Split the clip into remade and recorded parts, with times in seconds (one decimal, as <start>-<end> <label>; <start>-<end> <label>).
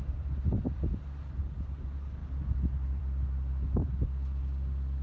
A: 0.0-5.0 recorded